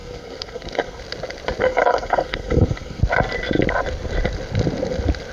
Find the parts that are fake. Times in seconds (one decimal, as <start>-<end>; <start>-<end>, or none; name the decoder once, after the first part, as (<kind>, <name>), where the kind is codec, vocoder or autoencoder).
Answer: 0.0-1.0 (codec, SNAC); 1.6-3.0